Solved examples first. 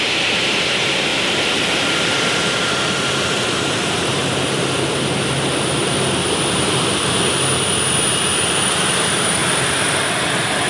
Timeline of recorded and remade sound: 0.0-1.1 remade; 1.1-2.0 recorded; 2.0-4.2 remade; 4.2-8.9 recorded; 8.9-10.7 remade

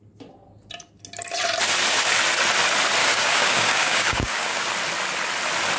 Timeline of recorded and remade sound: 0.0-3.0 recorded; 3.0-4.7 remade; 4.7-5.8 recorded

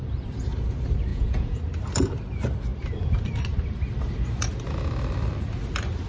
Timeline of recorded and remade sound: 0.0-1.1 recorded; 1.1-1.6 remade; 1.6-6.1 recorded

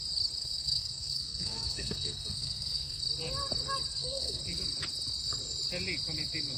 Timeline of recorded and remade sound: 0.0-0.4 recorded; 0.4-3.0 remade; 3.0-3.9 recorded; 3.9-4.4 remade; 4.4-6.6 recorded

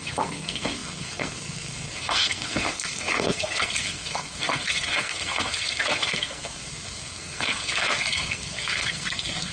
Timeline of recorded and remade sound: 0.0-9.5 remade

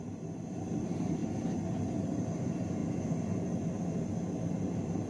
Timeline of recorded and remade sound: 0.0-1.2 remade; 1.2-2.0 recorded; 2.0-2.8 remade; 2.8-5.1 recorded

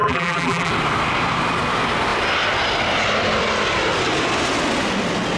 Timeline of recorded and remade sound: 0.0-0.7 remade; 0.7-5.4 recorded

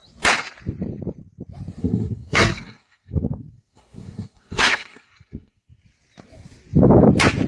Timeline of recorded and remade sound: 0.0-1.8 recorded; 1.8-5.7 remade; 5.7-7.5 recorded